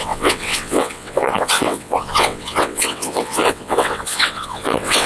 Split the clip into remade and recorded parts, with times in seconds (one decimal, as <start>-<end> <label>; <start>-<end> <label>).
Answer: 0.0-5.1 remade